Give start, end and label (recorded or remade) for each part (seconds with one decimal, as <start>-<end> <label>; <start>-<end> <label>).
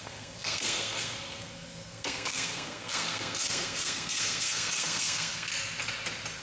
0.0-5.5 remade; 5.5-6.4 recorded